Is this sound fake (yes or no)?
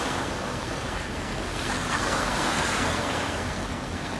yes